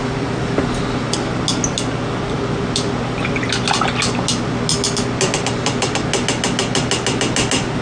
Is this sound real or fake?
real